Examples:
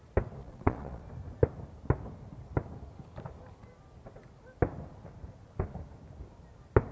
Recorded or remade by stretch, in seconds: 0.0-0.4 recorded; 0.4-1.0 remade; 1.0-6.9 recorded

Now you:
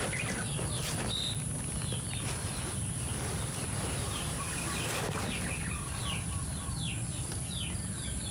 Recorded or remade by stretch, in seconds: 0.0-8.3 recorded

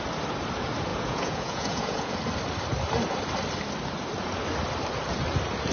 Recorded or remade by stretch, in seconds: 0.0-0.9 recorded; 0.9-2.1 remade; 2.1-5.7 recorded

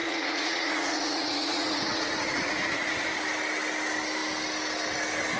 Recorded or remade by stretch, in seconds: 0.0-3.2 remade; 3.2-5.4 recorded

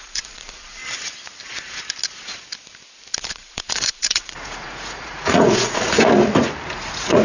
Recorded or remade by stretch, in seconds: 0.0-0.8 remade; 0.8-3.2 recorded; 3.2-6.1 remade; 6.1-6.7 recorded; 6.7-7.2 remade

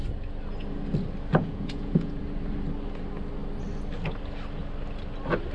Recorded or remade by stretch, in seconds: 0.0-1.3 recorded; 1.3-2.2 remade; 2.2-5.5 recorded

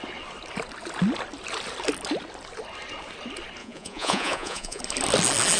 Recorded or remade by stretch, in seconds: 0.0-3.6 recorded; 3.6-4.8 remade; 4.8-5.6 recorded